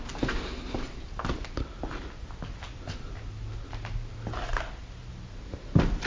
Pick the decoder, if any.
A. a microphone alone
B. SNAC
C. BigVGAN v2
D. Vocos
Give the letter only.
A